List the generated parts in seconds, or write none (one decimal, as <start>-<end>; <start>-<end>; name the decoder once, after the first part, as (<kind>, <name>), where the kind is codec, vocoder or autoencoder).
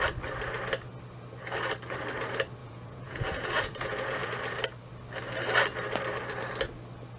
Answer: 2.6-4.3 (vocoder, Vocos)